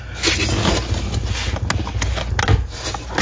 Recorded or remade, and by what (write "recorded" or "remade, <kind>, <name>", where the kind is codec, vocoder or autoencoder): recorded